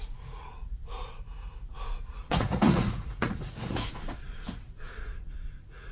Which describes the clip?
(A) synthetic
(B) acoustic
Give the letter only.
A